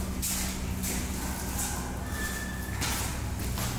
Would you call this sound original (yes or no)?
yes